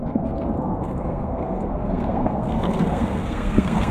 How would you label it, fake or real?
fake